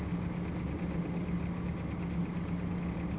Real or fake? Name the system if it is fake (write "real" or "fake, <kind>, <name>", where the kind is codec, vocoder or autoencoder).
real